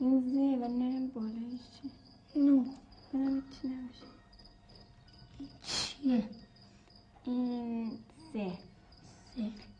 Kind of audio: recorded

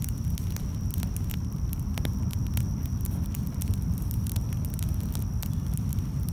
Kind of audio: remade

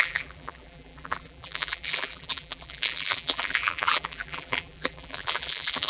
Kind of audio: remade